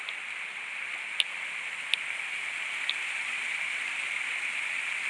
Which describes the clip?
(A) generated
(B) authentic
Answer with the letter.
B